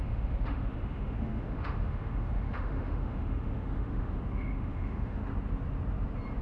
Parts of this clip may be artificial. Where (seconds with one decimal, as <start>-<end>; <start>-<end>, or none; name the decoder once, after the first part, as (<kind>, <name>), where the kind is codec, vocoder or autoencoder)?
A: 0.0-5.2 (autoencoder, DAC-VAE)